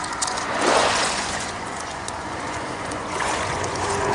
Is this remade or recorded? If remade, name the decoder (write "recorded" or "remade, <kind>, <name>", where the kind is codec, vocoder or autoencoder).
remade, vocoder, Vocos